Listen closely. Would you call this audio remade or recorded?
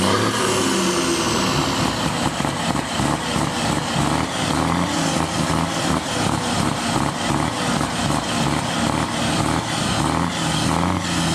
recorded